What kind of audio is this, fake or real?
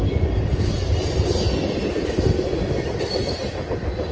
real